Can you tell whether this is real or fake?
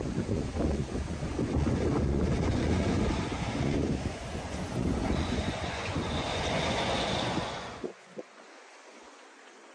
fake